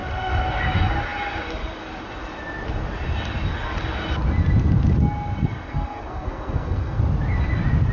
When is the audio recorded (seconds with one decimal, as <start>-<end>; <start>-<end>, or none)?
0.6-5.4; 7.0-7.9